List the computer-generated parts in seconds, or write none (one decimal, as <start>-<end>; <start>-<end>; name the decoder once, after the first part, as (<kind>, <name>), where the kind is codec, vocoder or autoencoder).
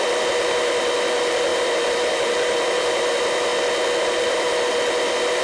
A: 0.0-3.5 (vocoder, BigVGAN v2); 4.0-5.4